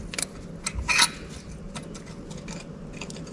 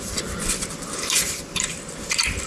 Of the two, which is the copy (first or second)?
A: second